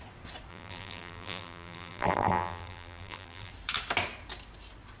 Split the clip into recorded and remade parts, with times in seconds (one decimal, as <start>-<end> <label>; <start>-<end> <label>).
0.0-0.5 recorded; 0.5-3.5 remade; 3.5-5.0 recorded